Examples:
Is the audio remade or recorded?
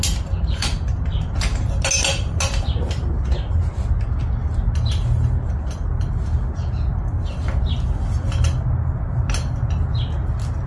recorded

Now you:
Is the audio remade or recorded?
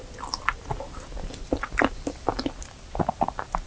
recorded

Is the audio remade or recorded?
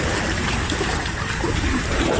recorded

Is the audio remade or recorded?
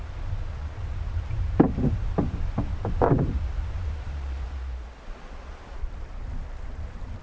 recorded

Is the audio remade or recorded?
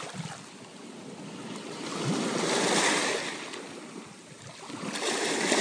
recorded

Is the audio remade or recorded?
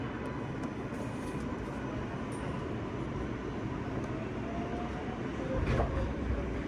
recorded